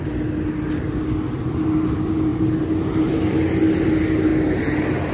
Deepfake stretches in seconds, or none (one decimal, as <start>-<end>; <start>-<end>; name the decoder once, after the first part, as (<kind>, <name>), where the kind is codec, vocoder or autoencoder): none